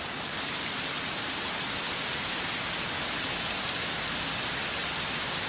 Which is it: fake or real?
real